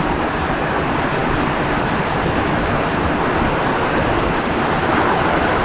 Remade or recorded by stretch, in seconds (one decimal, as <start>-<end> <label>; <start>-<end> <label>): 0.0-5.6 recorded